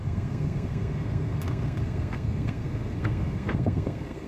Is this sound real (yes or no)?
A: no